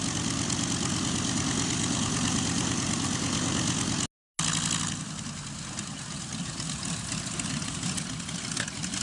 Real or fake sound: real